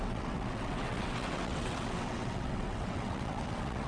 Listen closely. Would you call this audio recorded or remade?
remade